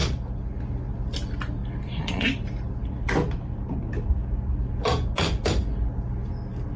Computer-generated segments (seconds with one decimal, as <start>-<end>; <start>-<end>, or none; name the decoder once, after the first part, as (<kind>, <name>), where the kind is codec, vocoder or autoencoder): 1.6-4.4 (vocoder, BigVGAN v2)